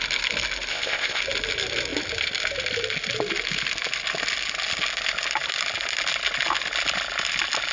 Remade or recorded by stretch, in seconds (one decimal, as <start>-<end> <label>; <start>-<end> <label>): 0.0-0.7 recorded; 0.7-1.2 remade; 1.2-7.7 recorded